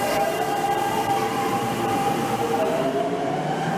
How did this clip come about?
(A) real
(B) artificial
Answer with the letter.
B